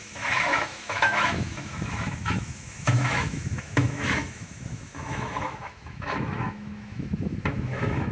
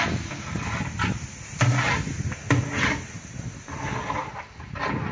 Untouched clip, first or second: second